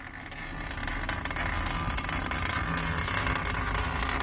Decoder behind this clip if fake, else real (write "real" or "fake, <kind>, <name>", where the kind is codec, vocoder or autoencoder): real